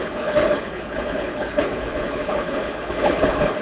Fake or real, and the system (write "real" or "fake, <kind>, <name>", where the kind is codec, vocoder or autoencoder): fake, codec, HILCodec